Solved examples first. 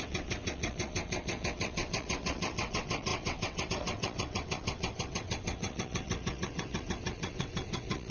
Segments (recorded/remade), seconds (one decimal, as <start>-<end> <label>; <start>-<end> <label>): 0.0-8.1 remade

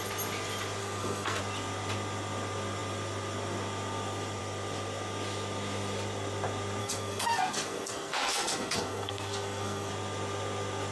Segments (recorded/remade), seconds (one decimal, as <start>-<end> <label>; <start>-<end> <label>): 0.0-0.8 recorded; 0.8-1.4 remade; 1.4-6.8 recorded; 6.8-9.9 remade; 9.9-10.9 recorded

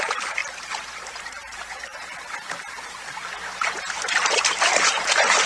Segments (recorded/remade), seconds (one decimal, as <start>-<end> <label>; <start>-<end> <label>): 0.0-0.4 remade; 0.4-1.1 recorded; 1.1-1.9 remade; 1.9-4.8 recorded; 4.8-5.5 remade

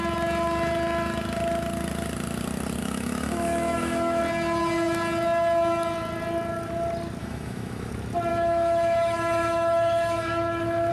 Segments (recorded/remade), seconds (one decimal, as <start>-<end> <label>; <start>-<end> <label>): 0.0-2.8 recorded; 2.8-4.2 remade; 4.2-7.2 recorded; 7.2-7.9 remade; 7.9-8.3 recorded; 8.3-10.9 remade

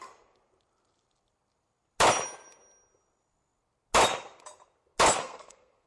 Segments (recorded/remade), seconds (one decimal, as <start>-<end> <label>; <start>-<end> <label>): 0.0-5.2 recorded; 5.2-5.9 remade